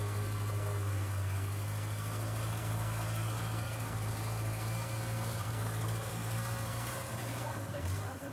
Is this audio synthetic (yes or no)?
yes